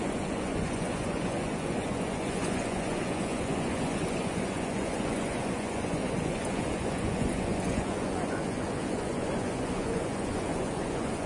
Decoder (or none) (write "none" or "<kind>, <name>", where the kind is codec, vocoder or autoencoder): vocoder, Vocos